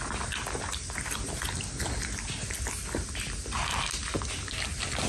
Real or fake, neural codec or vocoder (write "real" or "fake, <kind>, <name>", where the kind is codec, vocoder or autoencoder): real